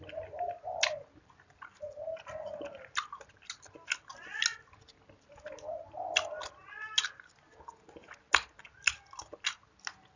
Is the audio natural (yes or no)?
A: yes